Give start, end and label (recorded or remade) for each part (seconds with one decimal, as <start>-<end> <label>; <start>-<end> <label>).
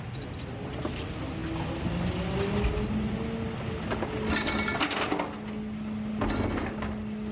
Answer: 0.0-7.3 recorded